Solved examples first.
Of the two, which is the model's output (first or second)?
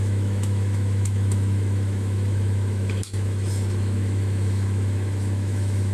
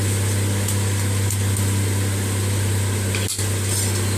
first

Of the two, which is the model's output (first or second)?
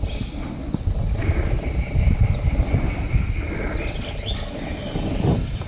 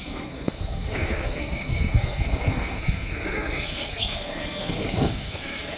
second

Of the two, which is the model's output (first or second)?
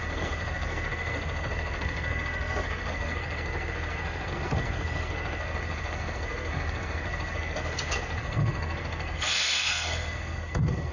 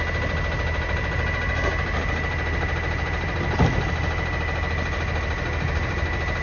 first